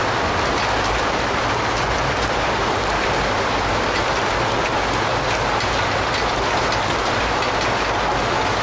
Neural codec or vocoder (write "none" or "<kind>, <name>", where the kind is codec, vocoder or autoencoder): none